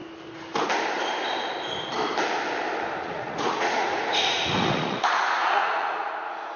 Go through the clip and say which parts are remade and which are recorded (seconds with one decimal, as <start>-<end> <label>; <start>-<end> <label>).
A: 0.0-3.0 recorded; 3.0-6.6 remade